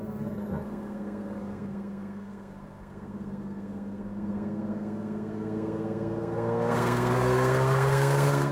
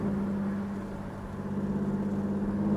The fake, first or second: first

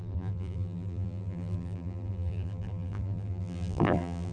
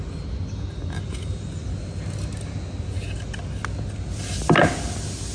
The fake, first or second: first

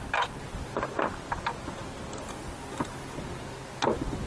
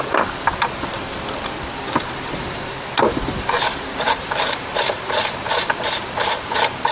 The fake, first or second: second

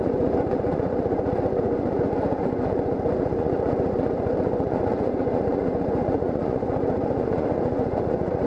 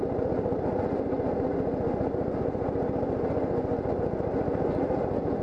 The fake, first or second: first